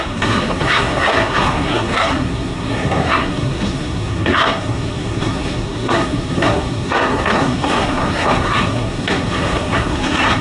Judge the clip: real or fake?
fake